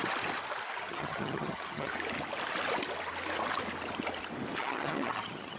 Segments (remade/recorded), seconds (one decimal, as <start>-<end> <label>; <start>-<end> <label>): 0.0-0.8 recorded; 0.8-1.9 remade; 1.9-4.6 recorded; 4.6-5.6 remade

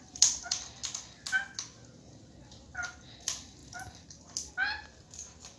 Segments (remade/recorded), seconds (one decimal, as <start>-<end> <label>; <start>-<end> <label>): 0.0-0.8 remade; 0.8-2.6 recorded; 2.6-3.6 remade; 3.6-4.5 recorded; 4.5-5.6 remade

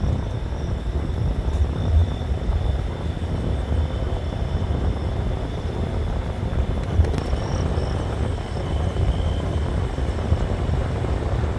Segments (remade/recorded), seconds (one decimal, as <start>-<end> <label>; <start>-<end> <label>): 0.0-11.6 recorded

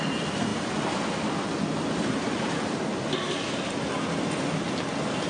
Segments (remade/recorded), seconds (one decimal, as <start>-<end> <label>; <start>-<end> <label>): 0.0-5.3 recorded

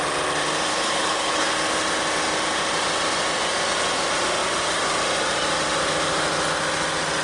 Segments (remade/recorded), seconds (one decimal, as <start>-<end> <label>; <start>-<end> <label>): 0.0-0.7 recorded; 0.7-1.5 remade; 1.5-7.2 recorded

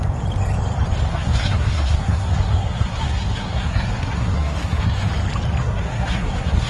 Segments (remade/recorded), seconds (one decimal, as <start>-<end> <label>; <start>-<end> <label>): 0.0-1.1 recorded; 1.1-5.1 remade; 5.1-5.6 recorded; 5.6-6.7 remade

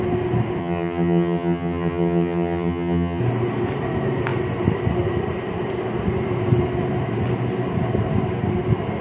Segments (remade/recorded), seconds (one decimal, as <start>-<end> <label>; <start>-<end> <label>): 0.0-0.6 recorded; 0.6-3.2 remade; 3.2-9.0 recorded